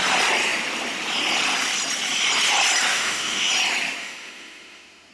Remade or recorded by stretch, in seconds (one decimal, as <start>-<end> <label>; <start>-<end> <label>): 0.0-2.9 recorded; 2.9-3.5 remade; 3.5-4.0 recorded; 4.0-5.1 remade